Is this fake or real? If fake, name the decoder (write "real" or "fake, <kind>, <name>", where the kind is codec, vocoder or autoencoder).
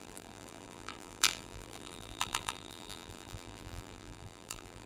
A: fake, vocoder, BigVGAN v2